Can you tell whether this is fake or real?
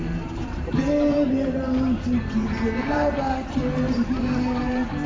fake